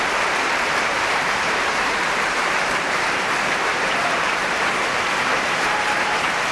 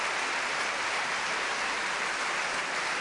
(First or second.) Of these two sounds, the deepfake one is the first